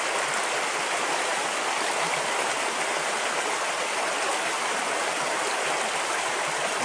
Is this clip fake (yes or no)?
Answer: no